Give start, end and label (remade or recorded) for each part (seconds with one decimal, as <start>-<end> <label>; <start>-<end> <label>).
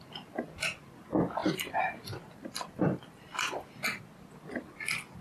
0.0-5.2 recorded